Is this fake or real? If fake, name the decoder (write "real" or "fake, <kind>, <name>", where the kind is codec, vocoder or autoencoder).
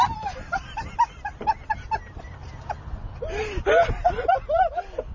real